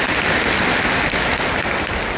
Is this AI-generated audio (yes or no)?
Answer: no